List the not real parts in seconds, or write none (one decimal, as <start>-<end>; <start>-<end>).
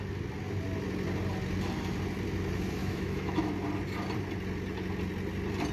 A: 2.8-3.5